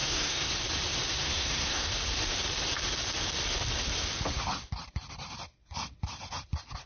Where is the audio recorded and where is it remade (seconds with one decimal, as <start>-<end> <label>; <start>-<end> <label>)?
0.0-0.5 remade; 0.5-1.1 recorded; 1.1-1.9 remade; 1.9-6.9 recorded